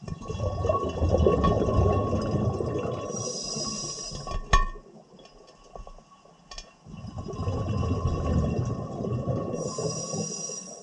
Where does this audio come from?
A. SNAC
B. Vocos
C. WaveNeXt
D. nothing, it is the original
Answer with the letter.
D